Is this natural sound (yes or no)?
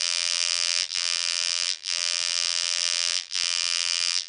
no